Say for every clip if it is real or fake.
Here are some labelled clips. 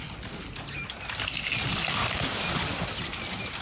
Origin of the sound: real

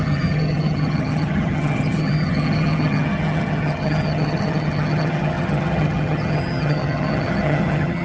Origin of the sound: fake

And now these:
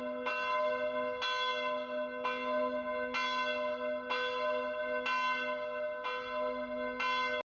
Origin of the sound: real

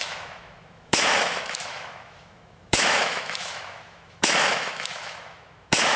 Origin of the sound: fake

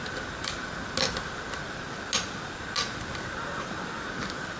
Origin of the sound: real